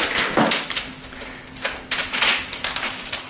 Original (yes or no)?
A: yes